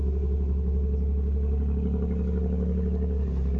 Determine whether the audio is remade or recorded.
recorded